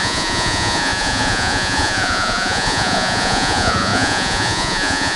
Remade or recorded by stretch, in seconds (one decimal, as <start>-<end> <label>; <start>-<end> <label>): 0.0-5.2 remade